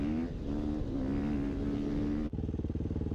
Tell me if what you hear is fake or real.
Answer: real